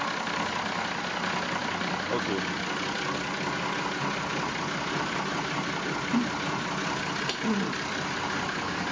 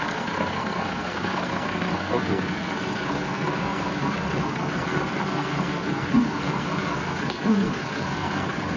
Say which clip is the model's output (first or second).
second